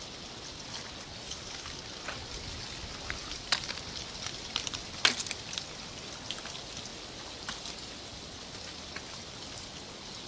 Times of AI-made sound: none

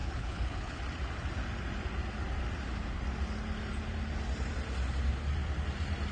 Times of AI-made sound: 0.0-0.8

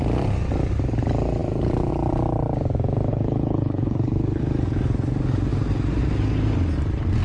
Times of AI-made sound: 3.1-4.4

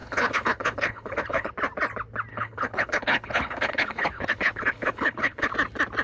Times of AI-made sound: 0.0-1.5; 2.3-5.5

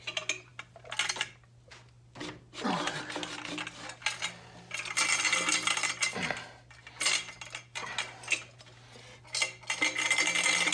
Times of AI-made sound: none

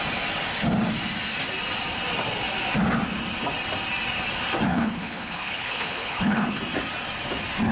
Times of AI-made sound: 4.7-6.6